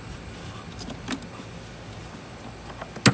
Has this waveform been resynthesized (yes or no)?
no